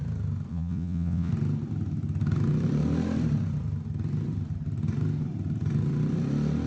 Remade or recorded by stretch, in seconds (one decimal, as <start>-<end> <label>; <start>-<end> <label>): 0.0-0.5 recorded; 0.5-1.3 remade; 1.3-6.7 recorded